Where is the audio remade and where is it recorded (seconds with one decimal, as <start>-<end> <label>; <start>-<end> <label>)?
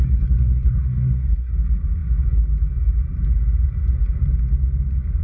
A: 0.0-1.5 remade; 1.5-5.2 recorded